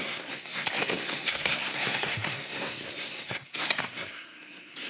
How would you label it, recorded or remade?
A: remade